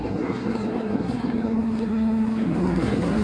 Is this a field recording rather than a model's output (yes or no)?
no